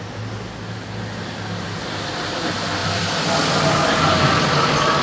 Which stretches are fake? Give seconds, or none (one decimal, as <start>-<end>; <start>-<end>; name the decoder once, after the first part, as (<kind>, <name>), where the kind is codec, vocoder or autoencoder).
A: 2.8-4.0 (vocoder, BigVGAN v2)